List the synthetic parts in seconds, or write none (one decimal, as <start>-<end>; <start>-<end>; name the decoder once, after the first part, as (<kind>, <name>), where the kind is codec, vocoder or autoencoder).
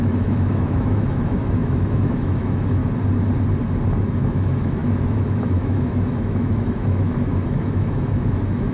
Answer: 0.0-2.8 (autoencoder, DAC-VAE); 4.1-8.7